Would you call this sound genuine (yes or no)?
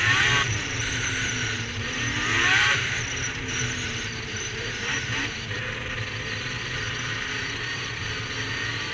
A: no